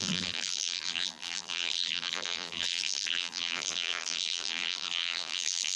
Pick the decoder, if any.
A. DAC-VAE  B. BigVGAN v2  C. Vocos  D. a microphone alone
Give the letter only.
B